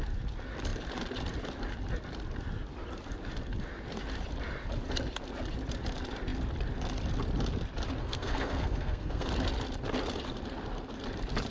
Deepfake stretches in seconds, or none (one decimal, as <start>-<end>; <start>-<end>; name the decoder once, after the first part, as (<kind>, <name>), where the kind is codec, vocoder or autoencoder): 8.0-9.3 (codec, SNAC)